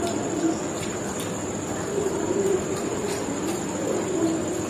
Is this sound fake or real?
fake